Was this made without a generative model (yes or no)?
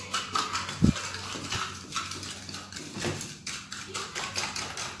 yes